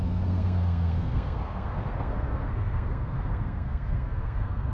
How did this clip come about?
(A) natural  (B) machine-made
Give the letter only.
B